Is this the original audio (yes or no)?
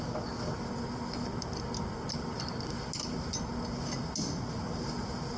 yes